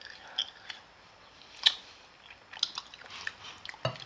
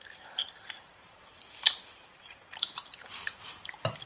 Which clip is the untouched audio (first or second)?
first